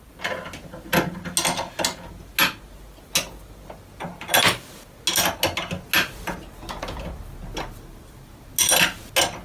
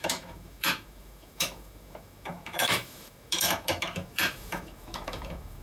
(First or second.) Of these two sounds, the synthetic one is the second